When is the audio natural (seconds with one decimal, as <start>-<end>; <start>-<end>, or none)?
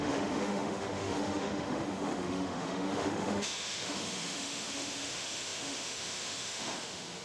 none